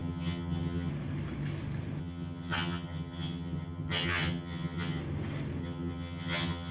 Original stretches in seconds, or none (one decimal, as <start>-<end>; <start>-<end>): 0.9-2.0; 5.0-5.6